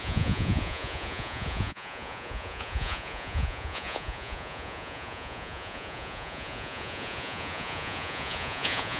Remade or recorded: remade